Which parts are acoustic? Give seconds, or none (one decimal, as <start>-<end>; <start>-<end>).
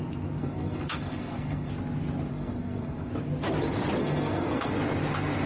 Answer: 0.0-0.4; 1.7-2.3; 3.1-4.0; 4.7-5.5